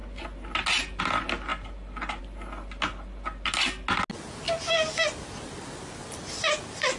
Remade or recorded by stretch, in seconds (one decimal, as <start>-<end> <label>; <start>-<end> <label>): 0.0-7.0 recorded